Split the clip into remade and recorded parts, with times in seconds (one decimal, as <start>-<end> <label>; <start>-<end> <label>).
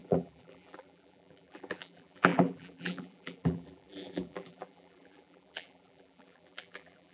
0.0-7.1 remade